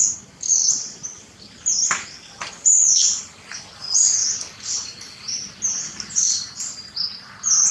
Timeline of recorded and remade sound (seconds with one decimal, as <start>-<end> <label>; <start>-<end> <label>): 0.0-7.7 recorded